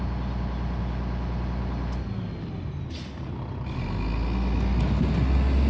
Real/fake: real